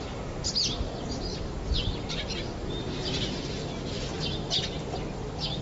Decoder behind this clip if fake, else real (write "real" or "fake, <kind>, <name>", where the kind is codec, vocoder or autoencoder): real